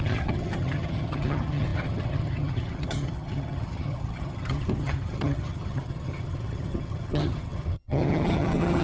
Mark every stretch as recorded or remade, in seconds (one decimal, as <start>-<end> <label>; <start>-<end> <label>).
0.0-8.8 remade